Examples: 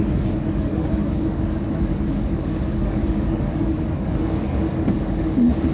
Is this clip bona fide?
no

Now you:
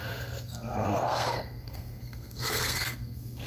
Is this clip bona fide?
no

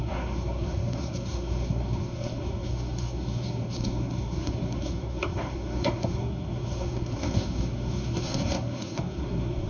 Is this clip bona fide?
no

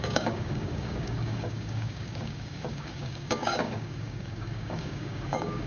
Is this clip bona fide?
no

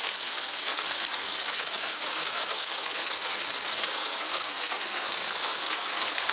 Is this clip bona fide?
no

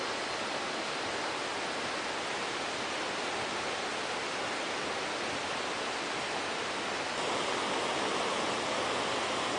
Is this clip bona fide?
yes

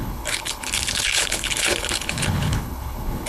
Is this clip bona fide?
no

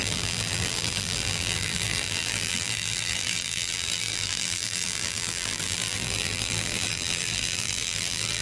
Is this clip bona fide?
no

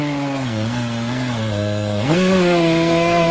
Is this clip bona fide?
no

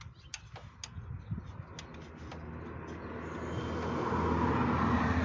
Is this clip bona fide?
yes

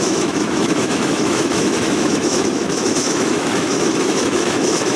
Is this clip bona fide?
no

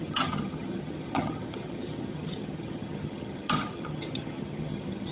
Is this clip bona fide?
no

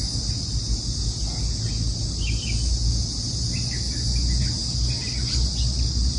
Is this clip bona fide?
yes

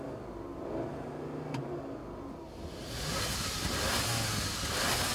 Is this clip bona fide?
yes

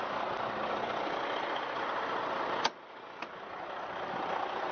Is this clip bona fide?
yes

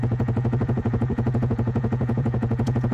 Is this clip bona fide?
no